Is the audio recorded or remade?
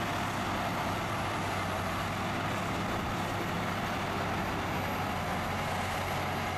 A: recorded